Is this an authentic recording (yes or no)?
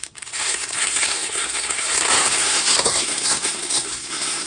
no